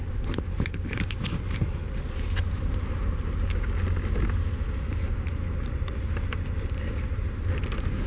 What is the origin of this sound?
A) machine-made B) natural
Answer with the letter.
B